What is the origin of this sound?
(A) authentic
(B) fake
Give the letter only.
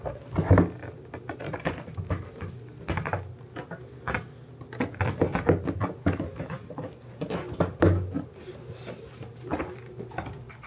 A